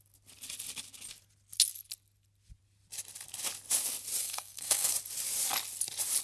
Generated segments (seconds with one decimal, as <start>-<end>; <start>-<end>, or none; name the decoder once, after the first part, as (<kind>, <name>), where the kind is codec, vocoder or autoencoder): 4.2-4.9 (codec, SNAC)